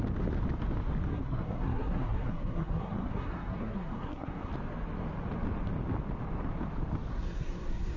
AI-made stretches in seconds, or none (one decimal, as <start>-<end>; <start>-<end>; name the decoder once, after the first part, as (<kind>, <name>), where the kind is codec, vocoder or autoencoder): 1.1-4.5 (codec, SNAC); 7.1-8.0